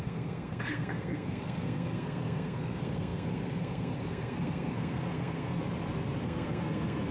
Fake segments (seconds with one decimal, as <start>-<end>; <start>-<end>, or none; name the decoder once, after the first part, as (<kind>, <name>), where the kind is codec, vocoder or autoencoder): 0.0-5.6 (codec, SNAC); 6.2-7.1